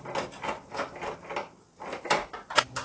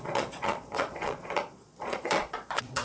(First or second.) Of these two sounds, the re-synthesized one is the second